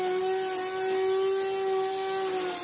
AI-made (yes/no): no